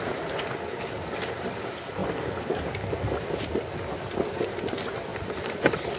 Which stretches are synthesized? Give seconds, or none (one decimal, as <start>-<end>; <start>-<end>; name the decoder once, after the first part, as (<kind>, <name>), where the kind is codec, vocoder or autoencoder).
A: none